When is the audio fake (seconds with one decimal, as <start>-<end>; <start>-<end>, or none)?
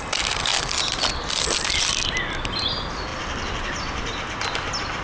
none